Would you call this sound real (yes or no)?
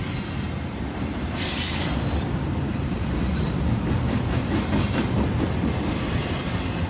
yes